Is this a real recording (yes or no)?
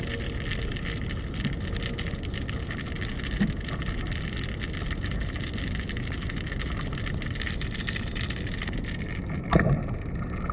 yes